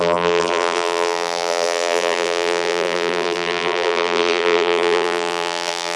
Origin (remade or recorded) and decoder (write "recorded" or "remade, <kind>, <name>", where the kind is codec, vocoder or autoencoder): remade, vocoder, BigVGAN v2